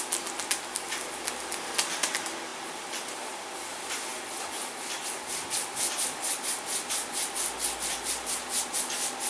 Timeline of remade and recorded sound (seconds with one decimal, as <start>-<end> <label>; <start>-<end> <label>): 0.0-9.3 recorded